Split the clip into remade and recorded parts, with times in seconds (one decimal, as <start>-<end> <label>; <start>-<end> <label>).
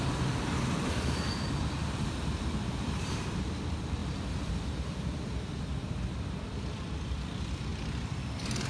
0.0-4.0 remade; 4.0-4.5 recorded; 4.5-8.7 remade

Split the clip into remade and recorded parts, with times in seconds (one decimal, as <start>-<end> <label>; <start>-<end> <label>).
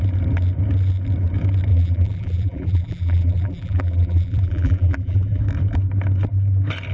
0.0-1.7 recorded; 1.7-5.4 remade; 5.4-6.9 recorded